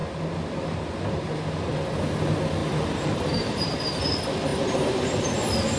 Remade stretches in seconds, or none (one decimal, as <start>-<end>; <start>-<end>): 2.6-3.9; 4.5-5.1